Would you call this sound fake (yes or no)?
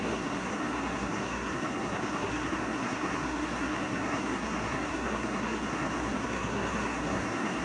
yes